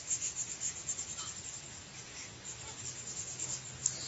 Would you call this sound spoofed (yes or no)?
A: yes